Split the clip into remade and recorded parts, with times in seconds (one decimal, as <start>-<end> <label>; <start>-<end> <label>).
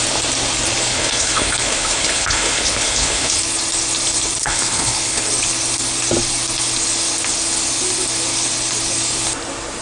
0.0-0.9 recorded; 0.9-3.4 remade; 3.4-4.4 recorded; 4.4-5.3 remade; 5.3-9.8 recorded